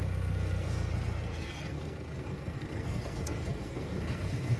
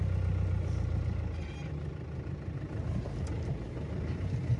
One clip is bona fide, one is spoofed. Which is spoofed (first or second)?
first